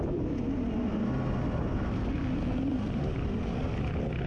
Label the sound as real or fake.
real